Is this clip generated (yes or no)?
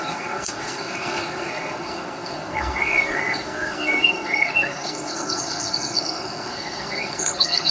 yes